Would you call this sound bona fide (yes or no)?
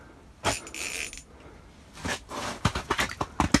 yes